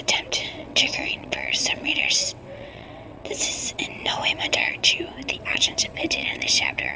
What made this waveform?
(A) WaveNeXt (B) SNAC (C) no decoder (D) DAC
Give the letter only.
A